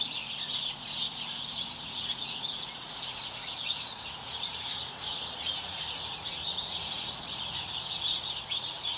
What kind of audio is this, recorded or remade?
remade